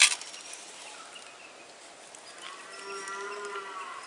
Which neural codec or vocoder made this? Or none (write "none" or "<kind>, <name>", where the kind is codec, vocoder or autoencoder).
none